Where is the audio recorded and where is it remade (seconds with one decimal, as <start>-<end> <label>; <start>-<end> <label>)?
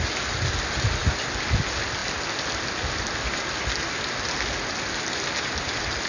0.0-6.1 recorded